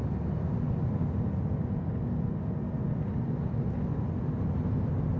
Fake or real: real